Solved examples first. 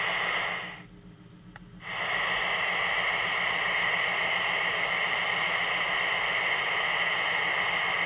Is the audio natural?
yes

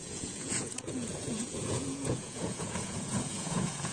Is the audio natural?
no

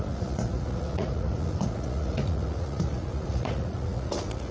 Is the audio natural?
no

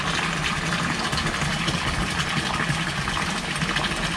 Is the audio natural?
yes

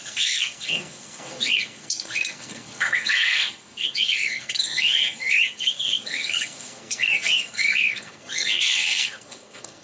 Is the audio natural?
no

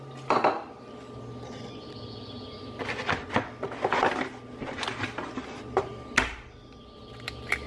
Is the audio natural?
yes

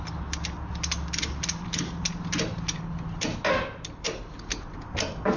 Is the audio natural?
yes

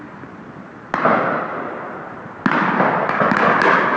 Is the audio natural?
yes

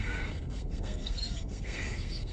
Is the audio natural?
no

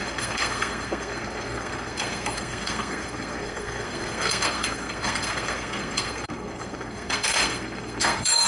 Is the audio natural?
no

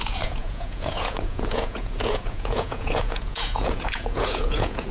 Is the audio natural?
no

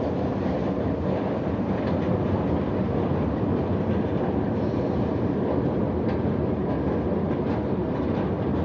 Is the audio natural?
yes